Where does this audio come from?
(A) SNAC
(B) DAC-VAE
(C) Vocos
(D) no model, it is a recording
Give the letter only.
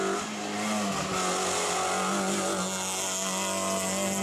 D